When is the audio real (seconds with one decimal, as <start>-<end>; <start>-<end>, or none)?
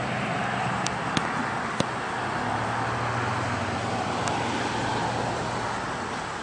0.0-6.4